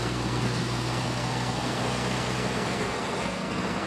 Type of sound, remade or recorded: remade